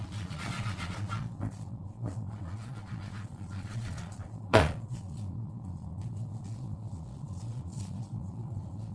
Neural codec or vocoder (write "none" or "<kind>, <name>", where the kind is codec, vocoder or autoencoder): vocoder, Vocos